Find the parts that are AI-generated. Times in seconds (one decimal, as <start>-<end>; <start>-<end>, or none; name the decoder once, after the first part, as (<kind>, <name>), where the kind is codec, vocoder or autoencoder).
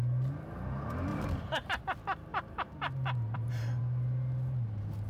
1.1-1.8 (vocoder, BigVGAN v2); 2.3-3.8